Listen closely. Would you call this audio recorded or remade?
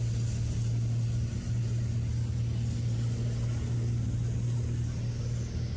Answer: recorded